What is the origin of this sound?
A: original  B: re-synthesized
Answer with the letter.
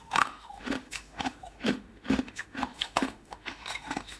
B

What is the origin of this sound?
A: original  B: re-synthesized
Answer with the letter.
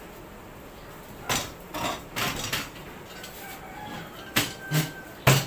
A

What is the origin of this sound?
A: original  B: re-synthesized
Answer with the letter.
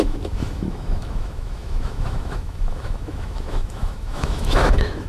B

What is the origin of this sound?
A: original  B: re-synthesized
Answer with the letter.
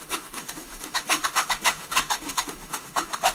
B